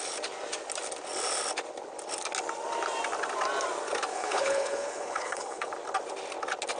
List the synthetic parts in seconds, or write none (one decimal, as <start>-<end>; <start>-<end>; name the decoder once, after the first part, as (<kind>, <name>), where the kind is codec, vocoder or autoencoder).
4.1-5.7 (codec, HILCodec)